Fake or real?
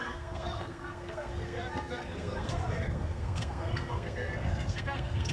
fake